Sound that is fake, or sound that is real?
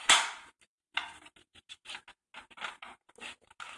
real